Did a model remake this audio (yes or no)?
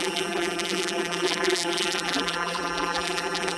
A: yes